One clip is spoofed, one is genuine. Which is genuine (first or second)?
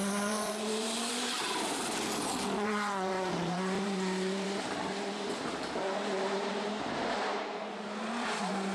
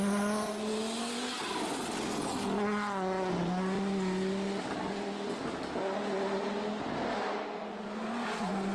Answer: second